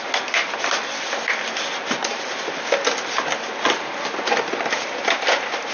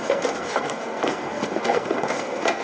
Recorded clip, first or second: first